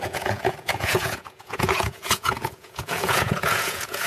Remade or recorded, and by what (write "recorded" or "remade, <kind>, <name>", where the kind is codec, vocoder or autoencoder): remade, vocoder, Vocos